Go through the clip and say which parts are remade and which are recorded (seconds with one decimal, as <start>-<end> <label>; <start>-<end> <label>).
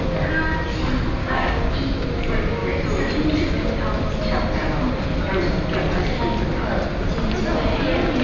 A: 0.0-1.2 recorded; 1.2-1.7 remade; 1.7-8.2 recorded